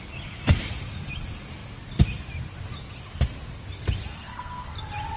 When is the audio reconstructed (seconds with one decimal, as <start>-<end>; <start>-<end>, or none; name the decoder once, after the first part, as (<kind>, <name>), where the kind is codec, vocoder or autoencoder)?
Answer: 4.1-4.7 (codec, SNAC)